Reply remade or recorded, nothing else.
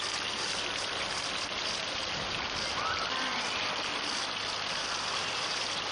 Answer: recorded